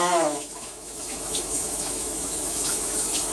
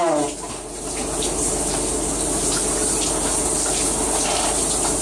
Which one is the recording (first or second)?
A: second